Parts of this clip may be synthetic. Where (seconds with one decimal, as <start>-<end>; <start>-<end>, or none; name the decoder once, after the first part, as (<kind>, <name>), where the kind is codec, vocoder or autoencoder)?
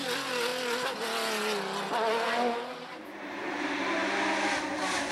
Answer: none